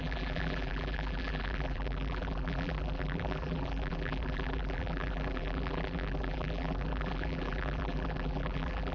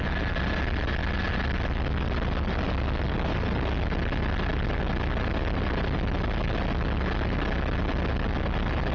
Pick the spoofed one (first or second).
first